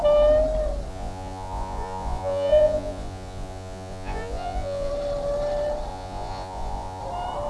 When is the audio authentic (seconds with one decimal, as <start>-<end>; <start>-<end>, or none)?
0.0-0.9; 4.9-5.9; 7.0-7.5